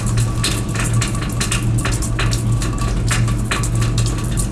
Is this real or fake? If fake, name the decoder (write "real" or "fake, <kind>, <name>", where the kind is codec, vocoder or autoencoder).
real